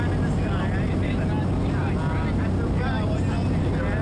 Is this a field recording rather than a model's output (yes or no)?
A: yes